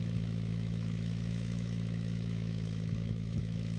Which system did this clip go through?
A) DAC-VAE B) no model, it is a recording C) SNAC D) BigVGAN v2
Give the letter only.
A